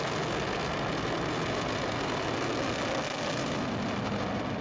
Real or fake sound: real